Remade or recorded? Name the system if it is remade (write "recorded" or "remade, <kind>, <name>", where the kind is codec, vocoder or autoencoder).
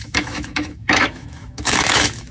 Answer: remade, autoencoder, DAC-VAE